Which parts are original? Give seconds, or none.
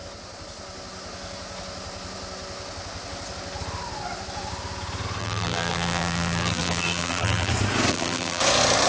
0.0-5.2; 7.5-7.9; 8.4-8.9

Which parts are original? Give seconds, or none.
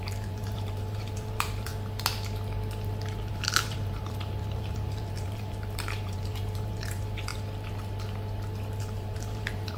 1.7-3.3; 7.3-8.8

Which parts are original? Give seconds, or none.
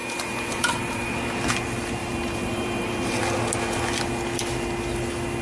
1.1-2.0; 3.2-5.4